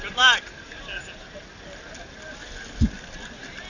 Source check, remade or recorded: recorded